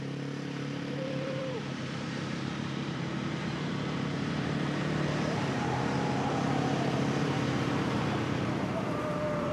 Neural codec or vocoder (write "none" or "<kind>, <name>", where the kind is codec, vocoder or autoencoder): vocoder, BigVGAN v2